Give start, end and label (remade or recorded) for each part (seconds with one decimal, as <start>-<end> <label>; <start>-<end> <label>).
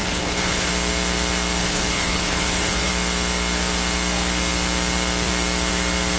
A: 0.0-0.7 remade; 0.7-1.6 recorded; 1.6-2.9 remade; 2.9-6.2 recorded